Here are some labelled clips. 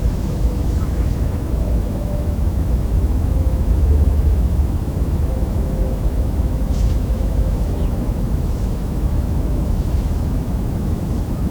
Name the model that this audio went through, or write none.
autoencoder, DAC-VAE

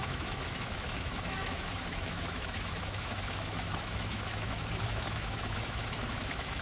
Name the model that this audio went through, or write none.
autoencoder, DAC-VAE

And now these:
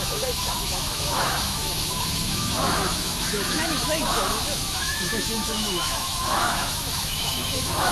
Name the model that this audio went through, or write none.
autoencoder, DAC-VAE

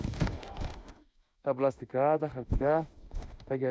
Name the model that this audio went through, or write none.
autoencoder, DAC-VAE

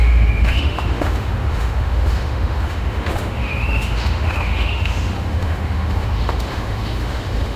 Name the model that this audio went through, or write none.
autoencoder, DAC-VAE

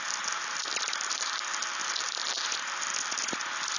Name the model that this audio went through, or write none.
none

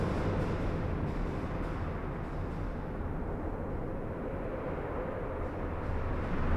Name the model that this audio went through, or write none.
none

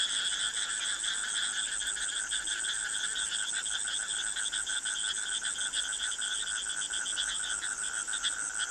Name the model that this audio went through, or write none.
none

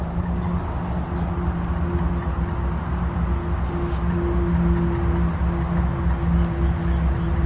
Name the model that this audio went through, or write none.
none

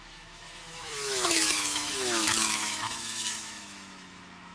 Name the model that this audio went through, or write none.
autoencoder, DAC-VAE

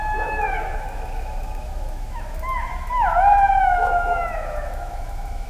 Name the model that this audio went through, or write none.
autoencoder, DAC-VAE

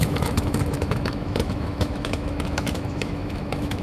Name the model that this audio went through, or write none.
autoencoder, DAC-VAE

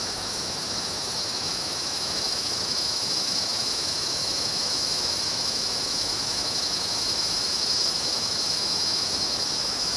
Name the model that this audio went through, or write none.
autoencoder, DAC-VAE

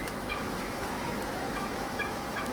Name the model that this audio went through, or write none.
autoencoder, DAC-VAE